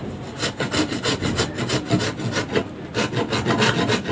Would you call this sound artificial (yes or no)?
no